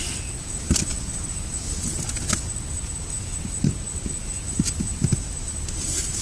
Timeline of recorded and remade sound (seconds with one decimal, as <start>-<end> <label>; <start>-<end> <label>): 0.0-6.2 recorded